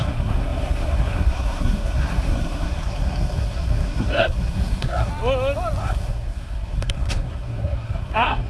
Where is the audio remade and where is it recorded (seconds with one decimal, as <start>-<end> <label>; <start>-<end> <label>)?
0.0-5.1 remade; 5.1-5.8 recorded; 5.8-8.5 remade